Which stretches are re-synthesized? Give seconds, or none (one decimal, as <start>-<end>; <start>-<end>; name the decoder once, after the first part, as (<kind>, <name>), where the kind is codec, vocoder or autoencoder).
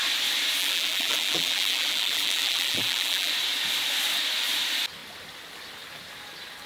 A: 0.6-3.3 (vocoder, BigVGAN v2)